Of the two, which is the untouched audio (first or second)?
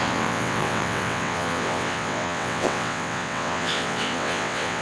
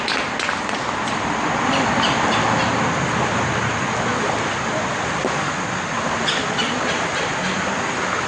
second